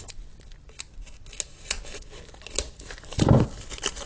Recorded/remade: recorded